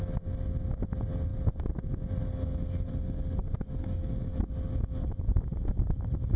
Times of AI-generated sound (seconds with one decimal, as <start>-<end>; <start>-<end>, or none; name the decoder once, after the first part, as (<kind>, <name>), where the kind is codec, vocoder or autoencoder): none